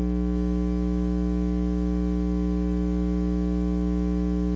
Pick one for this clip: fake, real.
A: real